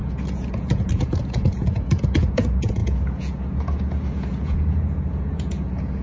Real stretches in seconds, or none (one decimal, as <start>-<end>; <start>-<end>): none